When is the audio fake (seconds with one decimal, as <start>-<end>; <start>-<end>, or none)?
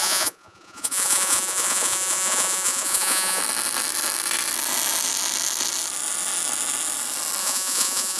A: 0.0-3.4; 7.4-8.2